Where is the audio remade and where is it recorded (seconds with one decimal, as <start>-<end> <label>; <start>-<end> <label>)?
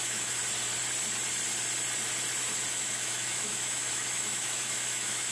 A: 0.0-0.4 remade; 0.4-2.7 recorded; 2.7-5.3 remade